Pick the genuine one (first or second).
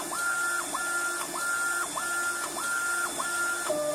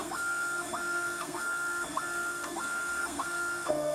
first